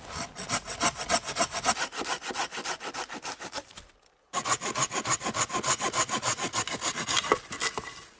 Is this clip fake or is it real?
real